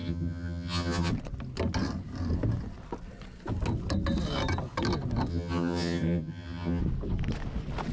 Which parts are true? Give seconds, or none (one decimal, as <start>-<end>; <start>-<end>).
1.1-5.3; 6.8-7.9